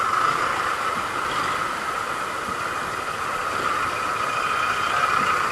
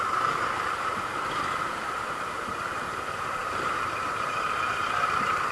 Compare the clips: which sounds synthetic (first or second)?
second